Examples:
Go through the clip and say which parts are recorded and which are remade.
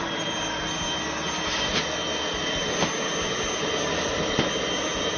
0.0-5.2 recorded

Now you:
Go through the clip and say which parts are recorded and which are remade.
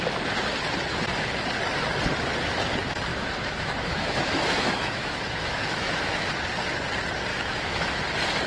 0.0-3.1 recorded; 3.1-6.3 remade; 6.3-7.3 recorded; 7.3-8.0 remade; 8.0-8.5 recorded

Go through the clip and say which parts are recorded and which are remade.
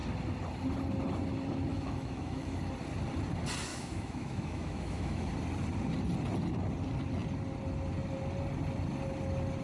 0.0-1.7 recorded; 1.7-2.6 remade; 2.6-3.7 recorded; 3.7-5.3 remade; 5.3-9.6 recorded